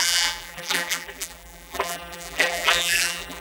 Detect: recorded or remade remade